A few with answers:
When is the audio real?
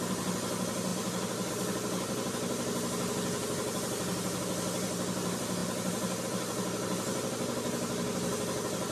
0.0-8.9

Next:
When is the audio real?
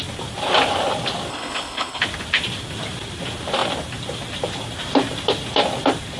0.0-1.3; 2.0-6.2